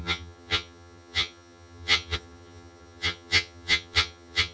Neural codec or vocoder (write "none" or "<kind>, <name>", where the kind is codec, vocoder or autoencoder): vocoder, HiFi-GAN